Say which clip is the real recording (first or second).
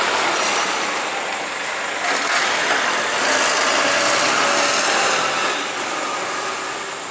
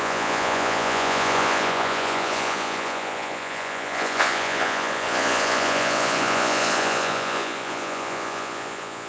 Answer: first